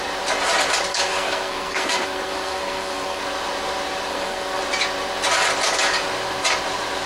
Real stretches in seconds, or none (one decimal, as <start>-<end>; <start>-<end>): 0.0-0.9; 3.2-4.1; 4.6-7.1